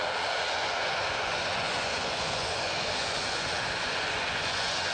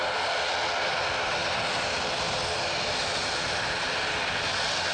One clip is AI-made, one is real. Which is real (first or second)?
second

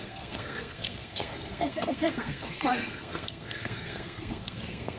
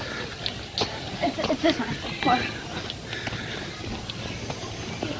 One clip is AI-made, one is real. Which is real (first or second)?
second